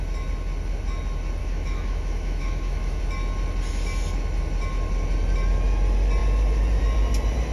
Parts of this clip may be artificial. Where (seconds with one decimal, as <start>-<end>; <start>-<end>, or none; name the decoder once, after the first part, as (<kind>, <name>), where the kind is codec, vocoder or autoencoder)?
1.4-3.0 (autoencoder, DAC-VAE)

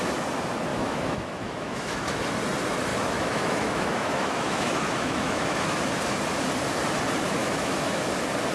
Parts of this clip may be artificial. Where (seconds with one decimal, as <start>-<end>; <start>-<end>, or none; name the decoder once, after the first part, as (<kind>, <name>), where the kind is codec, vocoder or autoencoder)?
0.7-2.2 (autoencoder, DAC-VAE); 2.9-5.9; 7.4-8.1

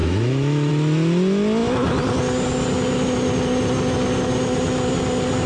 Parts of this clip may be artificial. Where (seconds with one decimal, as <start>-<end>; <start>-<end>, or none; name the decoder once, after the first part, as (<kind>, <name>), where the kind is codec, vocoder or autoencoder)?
0.0-0.7 (autoencoder, DAC-VAE)

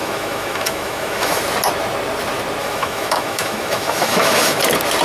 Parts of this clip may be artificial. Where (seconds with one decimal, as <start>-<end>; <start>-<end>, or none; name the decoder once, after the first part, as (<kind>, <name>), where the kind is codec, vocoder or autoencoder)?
0.0-1.4 (autoencoder, DAC-VAE); 2.6-4.6

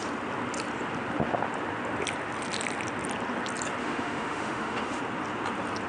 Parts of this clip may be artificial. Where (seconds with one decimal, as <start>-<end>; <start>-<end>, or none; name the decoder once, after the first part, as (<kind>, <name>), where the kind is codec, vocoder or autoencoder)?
3.8-5.0 (autoencoder, DAC-VAE)

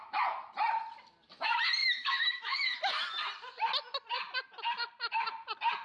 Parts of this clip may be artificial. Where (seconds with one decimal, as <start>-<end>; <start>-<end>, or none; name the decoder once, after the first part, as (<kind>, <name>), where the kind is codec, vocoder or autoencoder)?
1.8-2.8 (autoencoder, DAC-VAE)